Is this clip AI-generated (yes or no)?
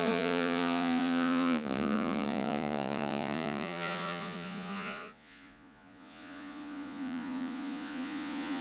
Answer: yes